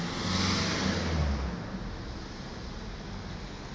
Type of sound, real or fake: real